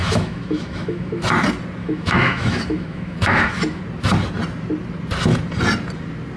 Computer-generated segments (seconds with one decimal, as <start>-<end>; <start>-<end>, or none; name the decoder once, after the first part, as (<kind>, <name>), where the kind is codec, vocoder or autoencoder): 0.0-1.2 (autoencoder, DAC-VAE); 1.8-3.8